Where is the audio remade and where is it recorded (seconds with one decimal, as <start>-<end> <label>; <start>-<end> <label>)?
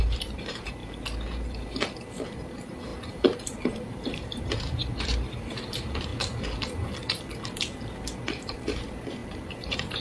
0.0-0.8 remade; 0.8-2.4 recorded; 2.4-6.1 remade; 6.1-8.4 recorded; 8.4-10.0 remade